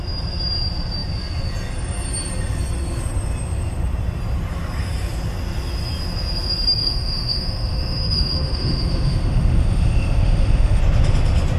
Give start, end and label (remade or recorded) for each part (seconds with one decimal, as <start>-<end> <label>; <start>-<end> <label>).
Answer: 0.0-6.8 recorded; 6.8-10.8 remade; 10.8-11.6 recorded